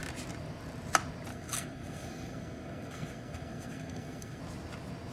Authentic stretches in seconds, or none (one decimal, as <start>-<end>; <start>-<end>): 0.0-1.3; 4.4-5.1